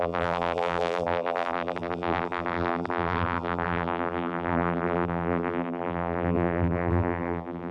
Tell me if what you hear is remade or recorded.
remade